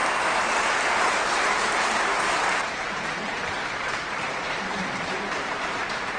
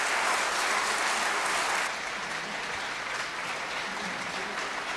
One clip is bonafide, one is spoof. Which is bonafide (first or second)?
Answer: second